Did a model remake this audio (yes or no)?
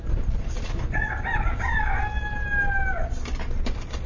no